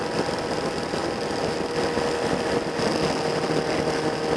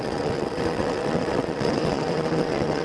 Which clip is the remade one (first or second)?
second